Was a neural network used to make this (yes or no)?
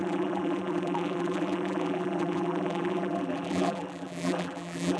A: yes